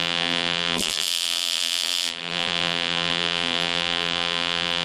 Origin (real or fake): fake